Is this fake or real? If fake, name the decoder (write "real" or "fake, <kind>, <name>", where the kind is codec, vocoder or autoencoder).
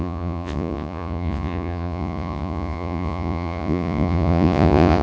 fake, vocoder, Vocos